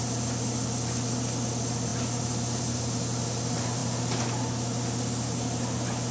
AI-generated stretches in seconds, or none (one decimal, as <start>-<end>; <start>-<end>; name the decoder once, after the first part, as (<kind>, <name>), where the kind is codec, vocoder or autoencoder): none